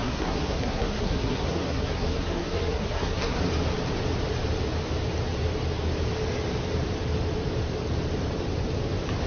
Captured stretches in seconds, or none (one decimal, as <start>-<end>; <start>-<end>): 3.4-9.3